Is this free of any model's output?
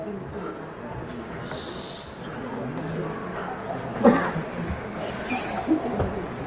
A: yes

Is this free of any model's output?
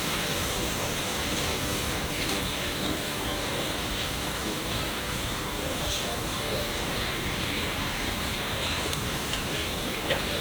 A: no